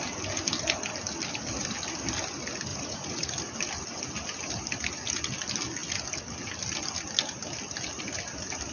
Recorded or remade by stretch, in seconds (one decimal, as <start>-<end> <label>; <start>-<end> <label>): 0.0-2.7 recorded; 2.7-3.3 remade; 3.3-8.7 recorded